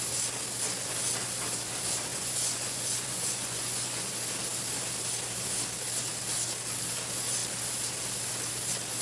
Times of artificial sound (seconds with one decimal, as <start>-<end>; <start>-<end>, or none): 2.1-4.1